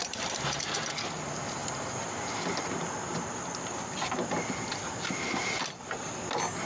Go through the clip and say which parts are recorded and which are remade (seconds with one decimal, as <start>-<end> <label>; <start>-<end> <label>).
0.0-0.9 remade; 0.9-1.6 recorded; 1.6-5.5 remade; 5.5-6.7 recorded